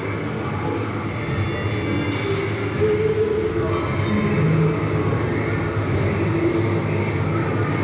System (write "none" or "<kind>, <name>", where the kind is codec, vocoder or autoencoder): none